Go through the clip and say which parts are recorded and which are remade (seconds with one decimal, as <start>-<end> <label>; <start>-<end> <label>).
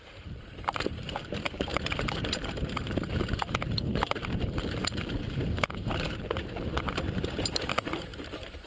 0.0-8.7 remade